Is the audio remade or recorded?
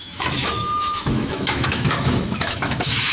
remade